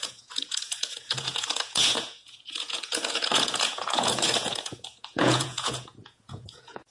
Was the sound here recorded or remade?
remade